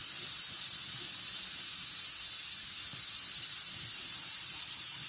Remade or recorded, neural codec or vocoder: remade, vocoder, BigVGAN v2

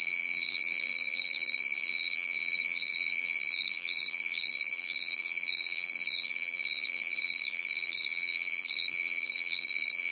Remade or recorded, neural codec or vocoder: remade, vocoder, BigVGAN v2